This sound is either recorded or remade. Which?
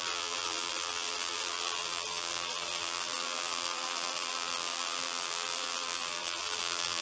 remade